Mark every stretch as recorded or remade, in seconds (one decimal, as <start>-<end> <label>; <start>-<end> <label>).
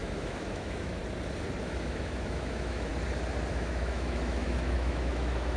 0.0-1.0 remade; 1.0-1.6 recorded; 1.6-2.9 remade; 2.9-3.5 recorded; 3.5-5.6 remade